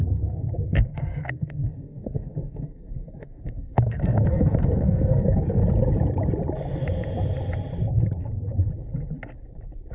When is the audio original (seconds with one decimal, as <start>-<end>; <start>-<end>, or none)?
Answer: 5.6-9.9

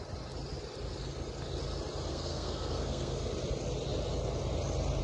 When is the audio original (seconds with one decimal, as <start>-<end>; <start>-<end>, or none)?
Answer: 0.0-2.1; 3.3-5.0

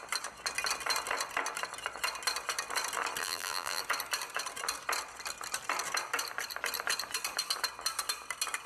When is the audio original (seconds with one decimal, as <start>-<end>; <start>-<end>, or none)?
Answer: 0.0-3.2; 3.8-8.7

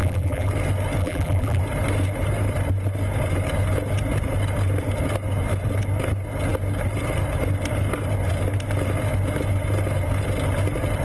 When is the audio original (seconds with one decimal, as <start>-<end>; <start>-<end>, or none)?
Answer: 0.5-1.0; 1.6-11.0

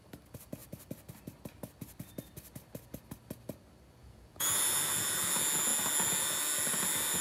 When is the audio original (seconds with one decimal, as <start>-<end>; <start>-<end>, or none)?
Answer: 0.0-4.0; 4.6-7.2